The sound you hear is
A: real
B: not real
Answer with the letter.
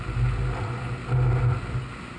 A